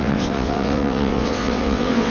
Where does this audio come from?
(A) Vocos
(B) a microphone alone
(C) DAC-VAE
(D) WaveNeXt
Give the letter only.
D